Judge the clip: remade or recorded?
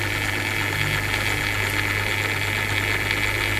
recorded